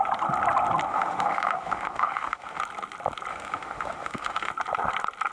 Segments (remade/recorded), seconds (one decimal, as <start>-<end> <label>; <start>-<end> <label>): 0.0-0.9 recorded; 0.9-2.6 remade; 2.6-3.3 recorded; 3.3-4.5 remade; 4.5-5.3 recorded